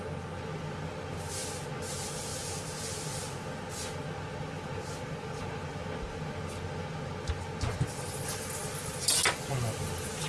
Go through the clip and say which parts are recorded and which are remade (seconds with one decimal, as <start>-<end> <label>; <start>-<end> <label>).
0.0-10.3 recorded